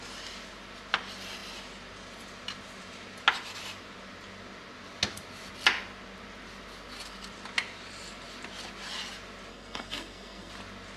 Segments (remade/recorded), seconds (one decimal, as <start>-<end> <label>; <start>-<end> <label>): 0.0-9.5 recorded; 9.5-10.5 remade; 10.5-11.0 recorded